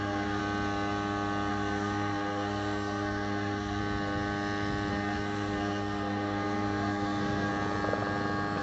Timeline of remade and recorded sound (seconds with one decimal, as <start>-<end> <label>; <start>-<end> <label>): 0.0-0.4 remade; 0.4-1.5 recorded; 1.5-3.8 remade; 3.8-4.9 recorded; 4.9-7.5 remade; 7.5-8.6 recorded